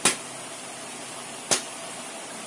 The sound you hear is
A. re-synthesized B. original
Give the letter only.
B